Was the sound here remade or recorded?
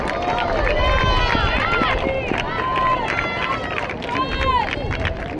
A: recorded